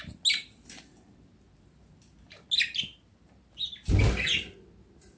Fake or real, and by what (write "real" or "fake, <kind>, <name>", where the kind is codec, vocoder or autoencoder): real